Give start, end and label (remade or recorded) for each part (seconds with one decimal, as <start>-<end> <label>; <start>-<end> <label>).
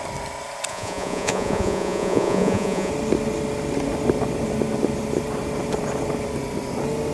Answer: 0.0-0.7 recorded; 0.7-2.9 remade; 2.9-7.1 recorded